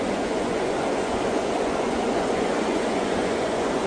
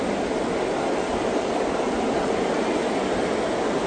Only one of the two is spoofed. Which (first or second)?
first